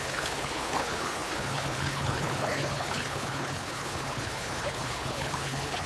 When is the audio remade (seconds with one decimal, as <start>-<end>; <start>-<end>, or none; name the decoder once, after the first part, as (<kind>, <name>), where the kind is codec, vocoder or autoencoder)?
0.0-5.9 (codec, HILCodec)